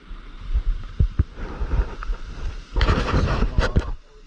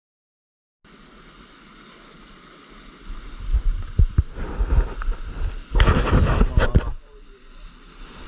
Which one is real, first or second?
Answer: second